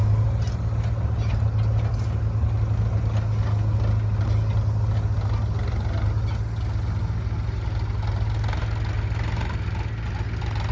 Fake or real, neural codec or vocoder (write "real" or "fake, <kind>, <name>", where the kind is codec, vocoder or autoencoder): real